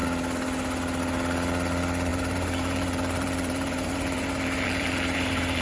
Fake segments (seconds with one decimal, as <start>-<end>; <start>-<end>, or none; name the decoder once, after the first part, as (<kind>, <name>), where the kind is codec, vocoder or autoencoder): 2.1-5.6 (vocoder, BigVGAN v2)